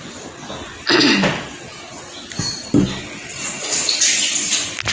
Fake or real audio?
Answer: real